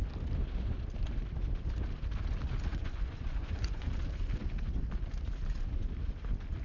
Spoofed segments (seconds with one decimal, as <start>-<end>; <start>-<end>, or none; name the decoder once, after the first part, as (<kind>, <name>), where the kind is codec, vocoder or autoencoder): 2.7-3.9 (vocoder, Vocos)